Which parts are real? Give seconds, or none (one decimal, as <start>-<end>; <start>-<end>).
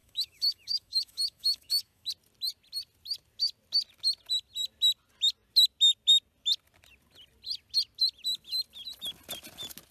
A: 2.1-9.9